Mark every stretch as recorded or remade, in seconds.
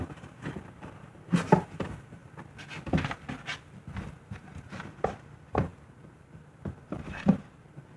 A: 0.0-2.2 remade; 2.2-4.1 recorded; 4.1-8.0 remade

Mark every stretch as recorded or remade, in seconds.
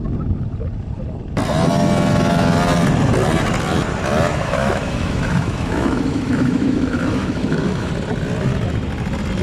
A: 0.0-4.3 recorded; 4.3-7.9 remade; 7.9-9.4 recorded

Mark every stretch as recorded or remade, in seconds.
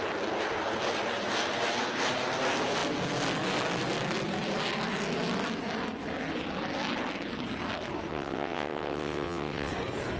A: 0.0-8.1 recorded; 8.1-9.7 remade; 9.7-10.2 recorded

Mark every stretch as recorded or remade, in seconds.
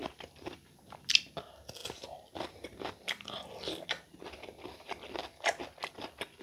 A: 0.0-1.1 remade; 1.1-6.4 recorded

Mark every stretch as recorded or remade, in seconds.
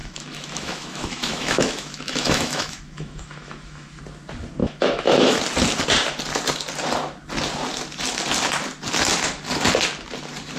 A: 0.0-4.0 remade; 4.0-4.6 recorded; 4.6-5.4 remade; 5.4-10.6 recorded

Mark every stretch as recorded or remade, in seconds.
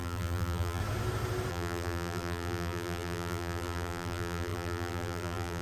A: 0.0-0.8 remade; 0.8-1.5 recorded; 1.5-5.6 remade